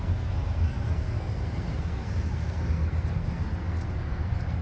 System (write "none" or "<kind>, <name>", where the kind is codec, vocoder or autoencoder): codec, SNAC